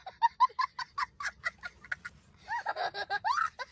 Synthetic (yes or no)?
no